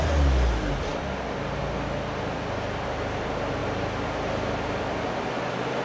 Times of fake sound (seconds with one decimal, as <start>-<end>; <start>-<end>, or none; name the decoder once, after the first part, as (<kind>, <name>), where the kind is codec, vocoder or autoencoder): none